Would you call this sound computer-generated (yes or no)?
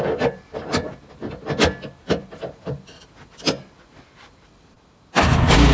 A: no